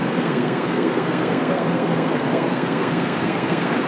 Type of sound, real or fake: fake